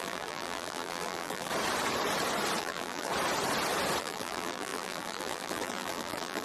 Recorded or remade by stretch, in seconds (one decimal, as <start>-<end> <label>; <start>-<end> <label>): 0.0-1.5 remade; 1.5-2.6 recorded; 2.6-3.1 remade; 3.1-4.0 recorded; 4.0-6.4 remade